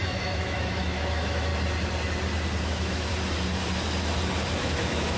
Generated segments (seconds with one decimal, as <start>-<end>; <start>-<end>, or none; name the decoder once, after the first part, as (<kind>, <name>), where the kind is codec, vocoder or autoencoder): 0.0-1.5 (autoencoder, DAC-VAE); 2.6-3.1; 4.5-5.2